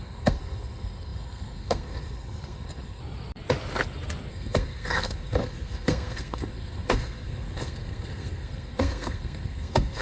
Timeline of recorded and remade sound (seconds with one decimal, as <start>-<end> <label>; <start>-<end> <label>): 0.0-3.0 remade; 3.0-4.3 recorded; 4.3-10.0 remade